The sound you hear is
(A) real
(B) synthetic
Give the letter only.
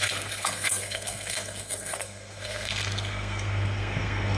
B